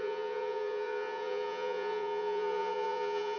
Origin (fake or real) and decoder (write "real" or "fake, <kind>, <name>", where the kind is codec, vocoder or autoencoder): fake, vocoder, Vocos